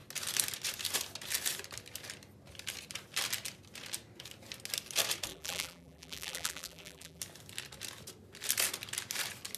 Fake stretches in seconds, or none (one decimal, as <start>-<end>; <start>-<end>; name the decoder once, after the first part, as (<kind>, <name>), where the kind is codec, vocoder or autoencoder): 5.3-7.2 (vocoder, BigVGAN v2)